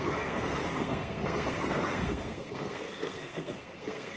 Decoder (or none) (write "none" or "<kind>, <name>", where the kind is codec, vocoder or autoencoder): codec, SNAC